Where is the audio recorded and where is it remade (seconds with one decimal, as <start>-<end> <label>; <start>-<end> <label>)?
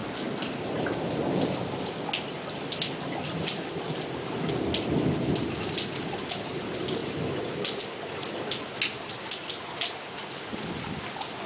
0.0-11.5 recorded